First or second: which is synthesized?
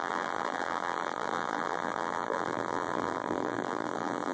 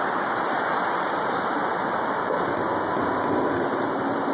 first